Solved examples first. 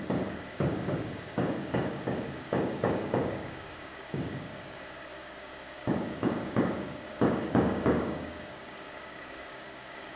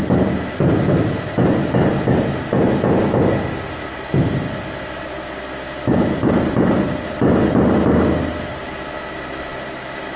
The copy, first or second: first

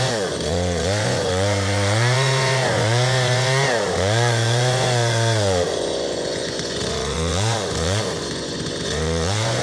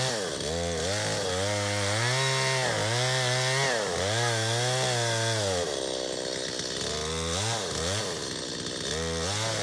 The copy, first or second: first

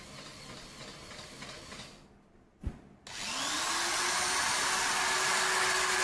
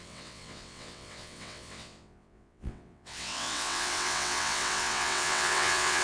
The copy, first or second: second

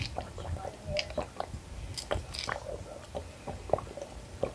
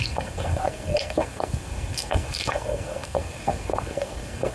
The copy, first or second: second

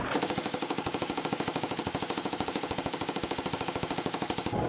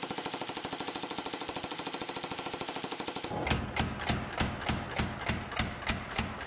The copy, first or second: first